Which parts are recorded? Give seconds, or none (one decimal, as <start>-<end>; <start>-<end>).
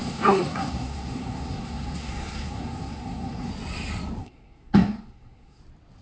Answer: 3.5-4.2; 5.6-6.0